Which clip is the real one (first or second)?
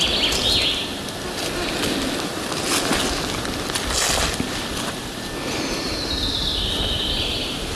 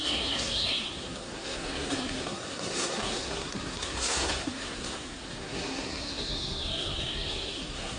first